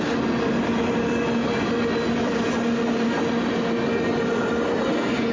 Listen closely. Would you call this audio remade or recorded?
recorded